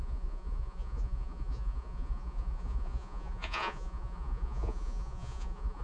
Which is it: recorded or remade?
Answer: remade